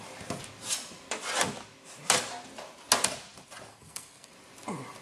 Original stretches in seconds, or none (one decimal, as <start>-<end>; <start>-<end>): 0.0-3.7; 4.3-5.0